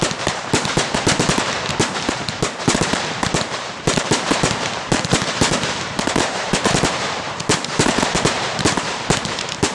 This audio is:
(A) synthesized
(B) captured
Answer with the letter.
A